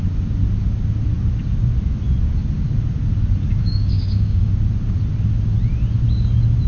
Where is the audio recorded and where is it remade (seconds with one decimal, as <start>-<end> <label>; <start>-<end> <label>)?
0.0-3.6 recorded; 3.6-4.5 remade; 4.5-6.7 recorded